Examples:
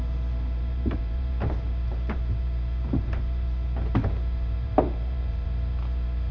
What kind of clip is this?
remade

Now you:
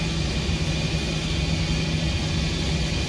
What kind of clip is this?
recorded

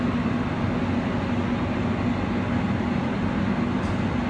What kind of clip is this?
recorded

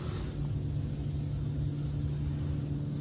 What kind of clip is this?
recorded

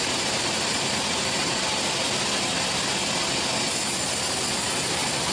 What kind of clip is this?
recorded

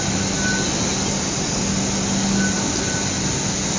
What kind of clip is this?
recorded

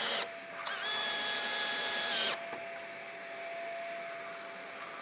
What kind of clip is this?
recorded